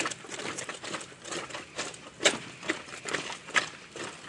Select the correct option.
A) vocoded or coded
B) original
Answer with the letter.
B